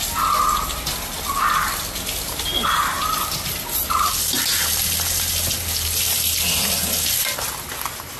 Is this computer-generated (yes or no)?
no